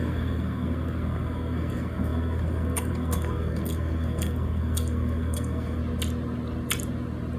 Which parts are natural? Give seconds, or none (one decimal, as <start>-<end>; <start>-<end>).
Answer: 5.8-7.4